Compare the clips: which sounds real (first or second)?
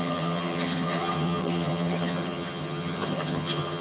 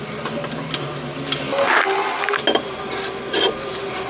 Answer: second